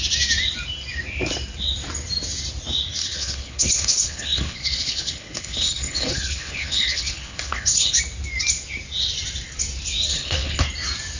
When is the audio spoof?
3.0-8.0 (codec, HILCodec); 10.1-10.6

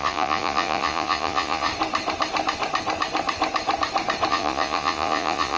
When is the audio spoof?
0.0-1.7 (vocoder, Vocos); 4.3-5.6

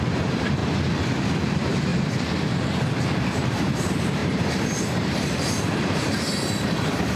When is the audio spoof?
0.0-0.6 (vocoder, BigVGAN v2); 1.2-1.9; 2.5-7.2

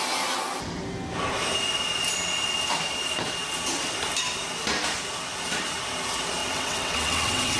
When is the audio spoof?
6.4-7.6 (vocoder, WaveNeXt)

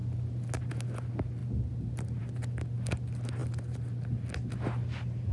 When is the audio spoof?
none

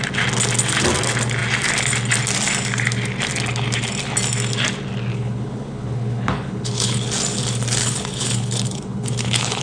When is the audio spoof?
5.1-7.1 (codec, HILCodec); 7.8-9.6

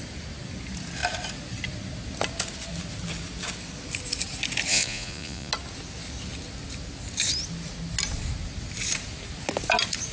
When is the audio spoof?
4.7-5.5 (vocoder, Vocos)